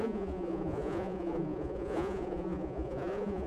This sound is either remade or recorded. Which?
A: remade